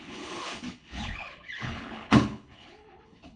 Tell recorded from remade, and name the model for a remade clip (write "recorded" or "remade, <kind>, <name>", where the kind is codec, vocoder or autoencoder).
remade, codec, HILCodec